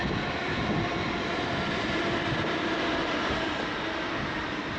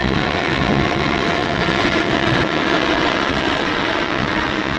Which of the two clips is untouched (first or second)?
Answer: first